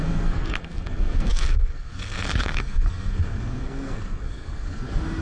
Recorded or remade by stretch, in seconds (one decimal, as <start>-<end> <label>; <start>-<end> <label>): 0.0-5.2 remade